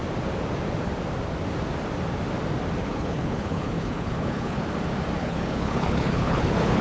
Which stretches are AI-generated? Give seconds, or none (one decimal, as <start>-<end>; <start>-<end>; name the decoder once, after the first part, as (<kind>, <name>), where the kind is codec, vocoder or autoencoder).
2.8-4.6 (codec, HILCodec); 5.2-6.8